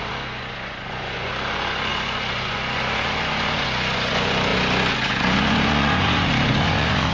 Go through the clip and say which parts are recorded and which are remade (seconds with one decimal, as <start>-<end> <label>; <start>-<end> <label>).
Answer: 0.0-7.1 remade